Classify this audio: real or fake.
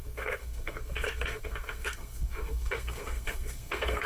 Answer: fake